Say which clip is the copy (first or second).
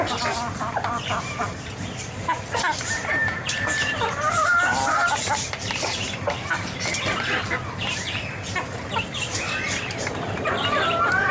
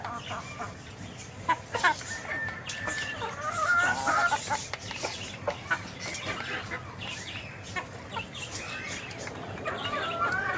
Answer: first